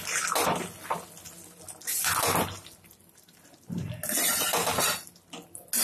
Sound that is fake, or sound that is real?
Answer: real